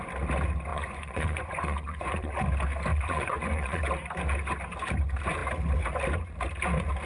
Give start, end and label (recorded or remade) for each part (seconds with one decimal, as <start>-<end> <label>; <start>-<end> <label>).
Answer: 0.0-0.7 recorded; 0.7-2.3 remade; 2.3-2.9 recorded; 2.9-3.8 remade; 3.8-7.1 recorded